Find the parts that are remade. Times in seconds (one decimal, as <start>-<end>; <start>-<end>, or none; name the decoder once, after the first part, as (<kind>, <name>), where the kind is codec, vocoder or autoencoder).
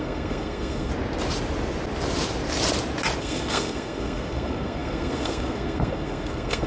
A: 0.0-0.9 (codec, SNAC); 3.2-6.7